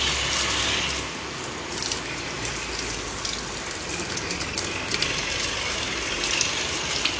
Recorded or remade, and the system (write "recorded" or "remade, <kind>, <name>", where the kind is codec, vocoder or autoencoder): recorded